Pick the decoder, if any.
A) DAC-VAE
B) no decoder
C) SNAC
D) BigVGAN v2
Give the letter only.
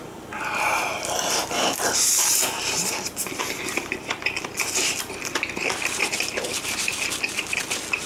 D